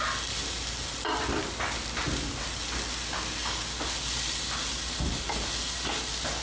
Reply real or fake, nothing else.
real